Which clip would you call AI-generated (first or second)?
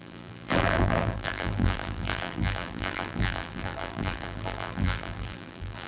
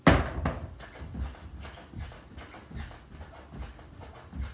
first